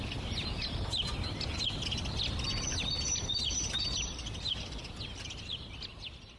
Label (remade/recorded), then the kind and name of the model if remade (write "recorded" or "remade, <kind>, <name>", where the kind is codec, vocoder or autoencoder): recorded